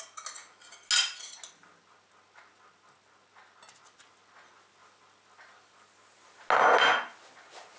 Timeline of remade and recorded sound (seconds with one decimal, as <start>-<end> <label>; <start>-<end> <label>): 0.0-7.8 recorded